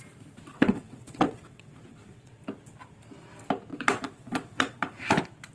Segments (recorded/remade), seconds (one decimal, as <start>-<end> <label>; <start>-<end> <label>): 0.0-0.5 recorded; 0.5-2.3 remade; 2.3-3.7 recorded; 3.7-5.1 remade; 5.1-5.5 recorded